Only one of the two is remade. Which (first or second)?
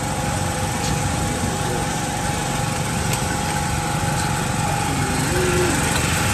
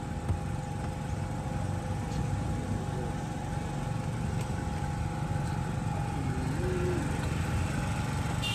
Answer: first